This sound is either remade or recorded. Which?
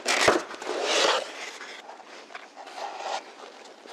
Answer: recorded